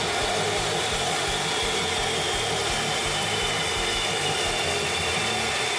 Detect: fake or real real